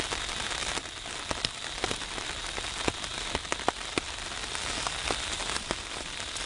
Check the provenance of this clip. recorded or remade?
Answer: recorded